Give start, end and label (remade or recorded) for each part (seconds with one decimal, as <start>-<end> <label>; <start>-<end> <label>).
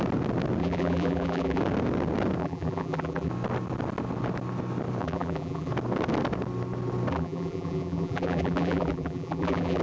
0.0-0.6 recorded; 0.6-1.6 remade; 1.6-2.4 recorded; 2.4-3.3 remade; 3.3-5.0 recorded; 5.0-5.7 remade; 5.7-7.1 recorded; 7.1-9.8 remade